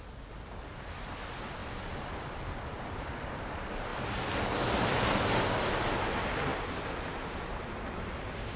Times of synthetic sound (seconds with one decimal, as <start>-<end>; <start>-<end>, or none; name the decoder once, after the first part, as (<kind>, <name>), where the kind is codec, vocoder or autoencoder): none